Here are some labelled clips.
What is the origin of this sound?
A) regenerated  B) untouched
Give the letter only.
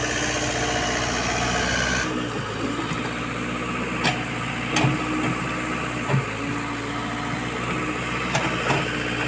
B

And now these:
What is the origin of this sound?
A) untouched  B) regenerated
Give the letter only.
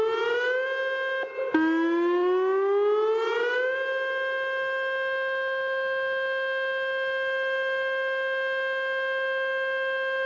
A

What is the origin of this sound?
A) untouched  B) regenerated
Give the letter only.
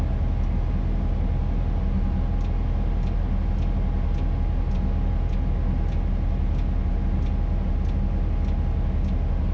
A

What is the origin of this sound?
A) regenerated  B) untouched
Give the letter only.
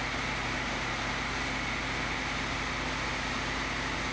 B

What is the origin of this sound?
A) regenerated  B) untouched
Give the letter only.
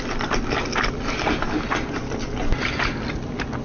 B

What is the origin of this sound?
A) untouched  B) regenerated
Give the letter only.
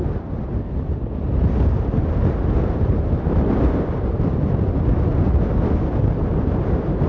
A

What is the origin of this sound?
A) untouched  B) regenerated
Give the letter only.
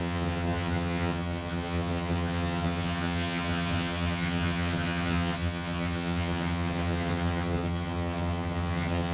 B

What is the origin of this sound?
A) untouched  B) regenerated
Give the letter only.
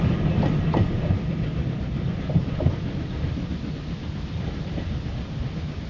A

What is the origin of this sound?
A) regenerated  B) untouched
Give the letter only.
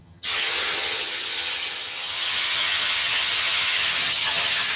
A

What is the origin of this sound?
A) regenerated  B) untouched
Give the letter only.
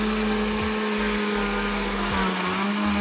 B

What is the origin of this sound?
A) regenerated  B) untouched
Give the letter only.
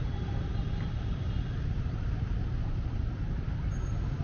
B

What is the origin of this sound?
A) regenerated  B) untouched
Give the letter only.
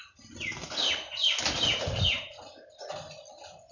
B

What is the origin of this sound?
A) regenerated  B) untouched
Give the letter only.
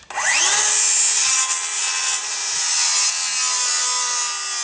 B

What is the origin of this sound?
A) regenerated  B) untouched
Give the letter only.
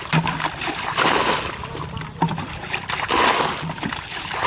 B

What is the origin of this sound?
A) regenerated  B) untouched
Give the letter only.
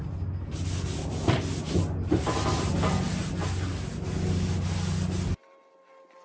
B